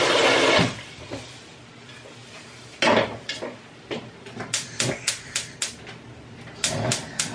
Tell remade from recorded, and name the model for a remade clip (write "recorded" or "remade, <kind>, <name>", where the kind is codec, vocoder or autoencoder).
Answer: recorded